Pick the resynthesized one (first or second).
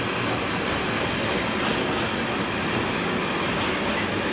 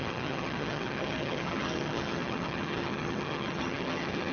second